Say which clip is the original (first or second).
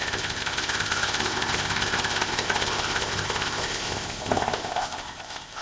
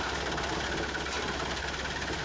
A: second